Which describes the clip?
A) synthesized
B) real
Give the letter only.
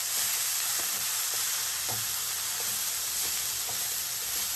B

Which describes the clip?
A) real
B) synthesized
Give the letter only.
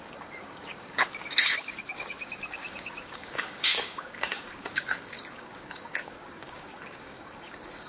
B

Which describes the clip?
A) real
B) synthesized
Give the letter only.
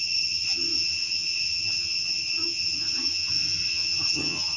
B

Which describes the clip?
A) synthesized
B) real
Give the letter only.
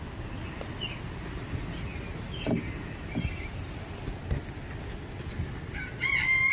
B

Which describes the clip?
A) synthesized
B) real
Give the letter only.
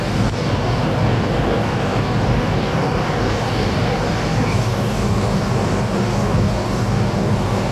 A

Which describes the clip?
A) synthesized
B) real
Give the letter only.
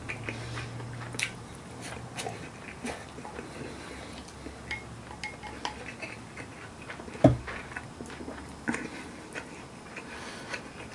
B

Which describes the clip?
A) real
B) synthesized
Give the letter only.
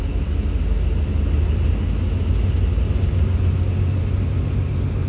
A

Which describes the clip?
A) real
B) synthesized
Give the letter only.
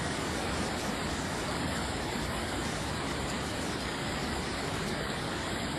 B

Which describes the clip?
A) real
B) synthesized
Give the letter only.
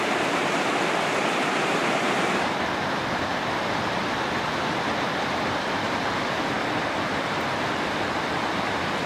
B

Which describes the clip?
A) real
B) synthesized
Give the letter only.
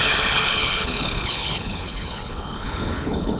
B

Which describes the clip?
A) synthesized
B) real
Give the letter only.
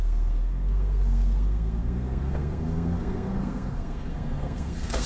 A